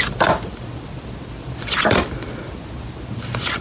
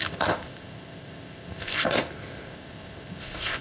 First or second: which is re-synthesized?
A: second